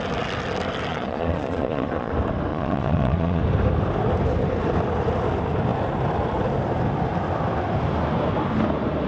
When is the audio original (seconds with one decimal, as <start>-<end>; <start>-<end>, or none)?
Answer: 0.0-0.9; 2.1-2.5; 3.4-9.1